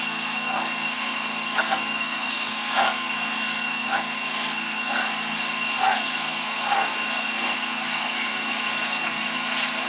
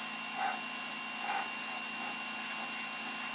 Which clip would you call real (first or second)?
second